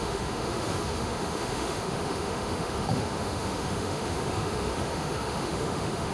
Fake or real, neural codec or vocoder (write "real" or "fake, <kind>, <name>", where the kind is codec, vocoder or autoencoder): fake, autoencoder, DAC-VAE